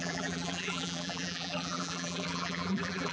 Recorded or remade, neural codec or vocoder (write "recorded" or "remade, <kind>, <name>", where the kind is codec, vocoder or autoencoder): remade, vocoder, BigVGAN v2